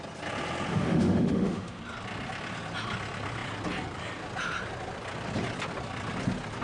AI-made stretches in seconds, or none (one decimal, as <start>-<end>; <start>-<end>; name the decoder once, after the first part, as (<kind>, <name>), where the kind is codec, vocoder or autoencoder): 0.7-1.8 (autoencoder, DAC-VAE)